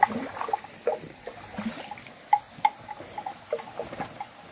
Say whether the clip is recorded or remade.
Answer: recorded